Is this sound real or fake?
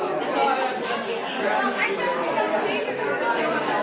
real